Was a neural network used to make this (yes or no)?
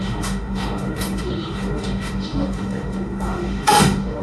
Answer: yes